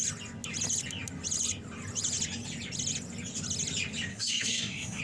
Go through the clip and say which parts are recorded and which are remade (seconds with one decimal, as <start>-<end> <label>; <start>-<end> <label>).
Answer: 0.0-4.1 recorded; 4.1-5.0 remade